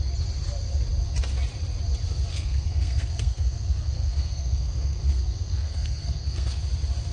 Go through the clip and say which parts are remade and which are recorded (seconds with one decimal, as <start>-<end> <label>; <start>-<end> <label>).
0.0-2.3 recorded; 2.3-6.6 remade; 6.6-7.1 recorded